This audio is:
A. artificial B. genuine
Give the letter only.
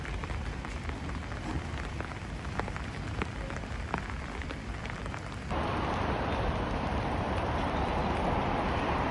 A